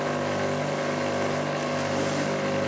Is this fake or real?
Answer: real